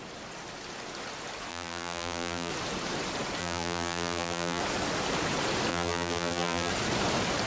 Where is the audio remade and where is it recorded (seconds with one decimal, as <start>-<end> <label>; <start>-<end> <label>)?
0.0-1.5 recorded; 1.5-2.5 remade; 2.5-3.4 recorded; 3.4-4.6 remade; 4.6-5.7 recorded; 5.7-6.7 remade; 6.7-7.5 recorded